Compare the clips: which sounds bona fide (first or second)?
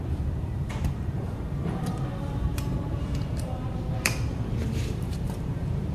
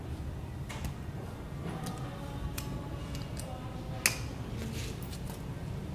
second